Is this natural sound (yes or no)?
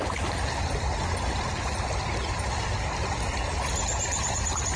yes